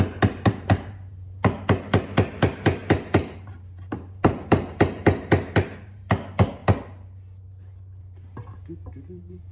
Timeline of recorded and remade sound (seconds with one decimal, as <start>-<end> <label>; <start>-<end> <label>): 0.0-6.6 remade; 6.6-8.0 recorded; 8.0-9.5 remade